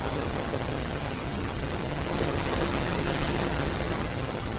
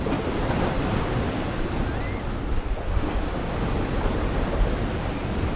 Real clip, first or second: second